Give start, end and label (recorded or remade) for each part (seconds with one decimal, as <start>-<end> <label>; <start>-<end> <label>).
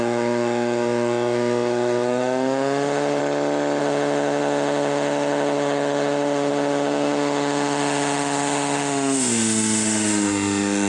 0.0-3.2 remade; 3.2-3.8 recorded; 3.8-10.9 remade